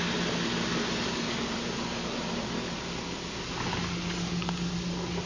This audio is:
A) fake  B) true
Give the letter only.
B